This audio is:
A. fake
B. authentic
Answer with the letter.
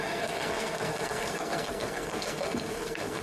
A